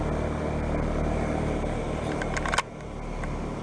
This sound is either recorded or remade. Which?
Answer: recorded